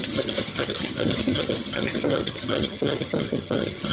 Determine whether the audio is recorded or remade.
remade